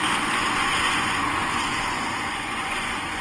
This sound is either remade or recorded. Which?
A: remade